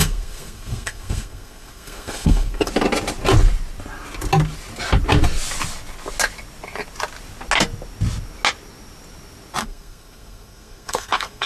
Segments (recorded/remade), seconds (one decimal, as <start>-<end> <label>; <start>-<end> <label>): 0.0-2.7 remade; 2.7-9.6 recorded; 9.6-11.5 remade